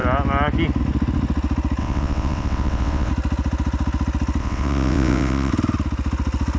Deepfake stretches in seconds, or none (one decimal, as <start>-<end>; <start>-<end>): 1.8-3.1; 4.4-5.5